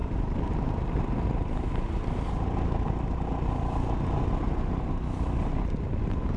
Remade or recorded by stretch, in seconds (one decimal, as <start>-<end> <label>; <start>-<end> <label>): 0.0-6.4 recorded